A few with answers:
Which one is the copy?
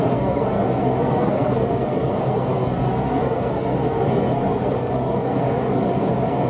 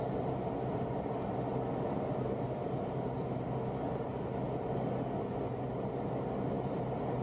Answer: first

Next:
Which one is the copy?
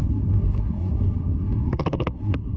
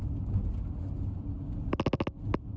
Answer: first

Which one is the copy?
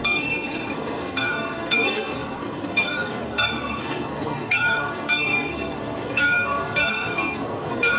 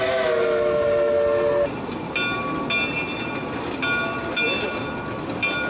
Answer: first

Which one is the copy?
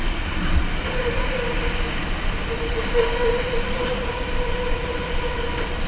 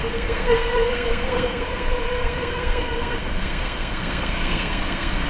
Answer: second